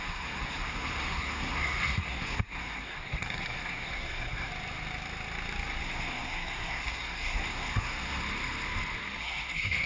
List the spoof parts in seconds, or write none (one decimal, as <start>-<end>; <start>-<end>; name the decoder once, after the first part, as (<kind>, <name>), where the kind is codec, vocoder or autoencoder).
0.0-4.5 (codec, SNAC); 5.8-8.2; 9.2-9.9